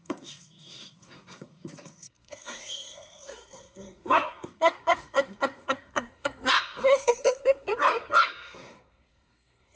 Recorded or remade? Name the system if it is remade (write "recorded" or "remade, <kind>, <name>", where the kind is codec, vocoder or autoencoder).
remade, codec, SNAC